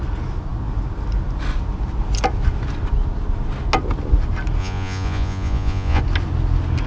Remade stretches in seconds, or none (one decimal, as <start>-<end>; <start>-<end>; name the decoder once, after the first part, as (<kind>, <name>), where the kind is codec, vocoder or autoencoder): 4.6-6.0 (vocoder, Vocos)